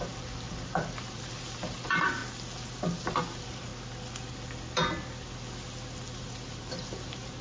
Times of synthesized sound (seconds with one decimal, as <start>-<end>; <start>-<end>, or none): 0.0-2.2; 3.0-3.7; 6.2-7.4